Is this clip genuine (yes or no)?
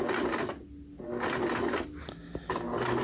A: yes